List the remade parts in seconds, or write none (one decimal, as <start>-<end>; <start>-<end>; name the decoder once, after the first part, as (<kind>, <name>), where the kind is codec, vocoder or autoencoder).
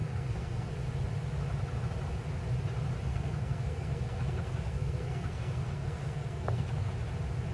0.0-0.7 (codec, SNAC); 3.1-6.9